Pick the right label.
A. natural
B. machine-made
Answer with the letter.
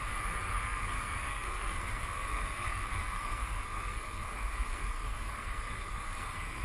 B